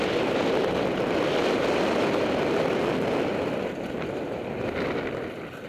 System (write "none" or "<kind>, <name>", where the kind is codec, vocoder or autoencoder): none